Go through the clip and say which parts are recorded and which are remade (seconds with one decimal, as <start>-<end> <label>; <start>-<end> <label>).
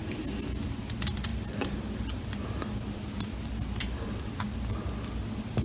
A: 0.0-0.8 remade; 0.8-1.3 recorded; 1.3-4.7 remade; 4.7-5.6 recorded